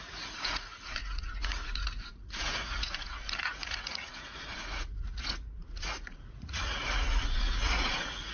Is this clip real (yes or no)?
no